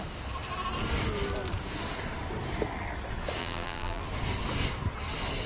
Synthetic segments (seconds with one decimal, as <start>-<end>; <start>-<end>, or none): 3.4-4.0